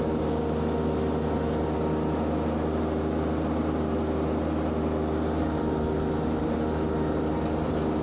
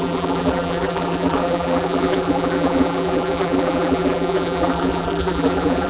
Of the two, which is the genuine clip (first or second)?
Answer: first